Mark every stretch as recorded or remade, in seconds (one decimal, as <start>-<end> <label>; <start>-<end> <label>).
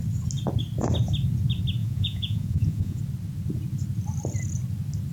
0.0-1.8 recorded; 1.8-3.0 remade; 3.0-5.1 recorded